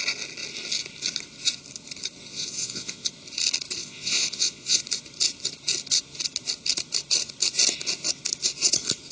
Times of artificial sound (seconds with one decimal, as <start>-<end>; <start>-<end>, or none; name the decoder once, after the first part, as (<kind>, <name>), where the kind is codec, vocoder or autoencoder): 2.3-3.1 (vocoder, Vocos); 3.8-4.8